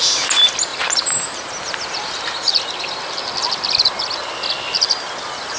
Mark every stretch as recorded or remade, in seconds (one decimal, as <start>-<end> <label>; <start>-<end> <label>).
0.0-0.7 recorded; 0.7-1.4 remade; 1.4-5.6 recorded